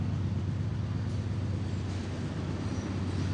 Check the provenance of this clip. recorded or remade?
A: recorded